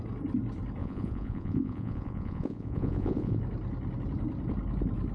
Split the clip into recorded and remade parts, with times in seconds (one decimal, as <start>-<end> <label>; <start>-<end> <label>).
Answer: 0.0-0.8 recorded; 0.8-3.4 remade; 3.4-5.1 recorded